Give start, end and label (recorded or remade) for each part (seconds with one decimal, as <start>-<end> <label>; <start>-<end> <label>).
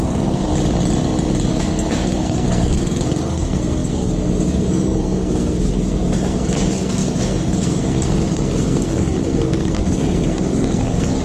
0.0-0.5 remade; 0.5-1.5 recorded; 1.5-11.2 remade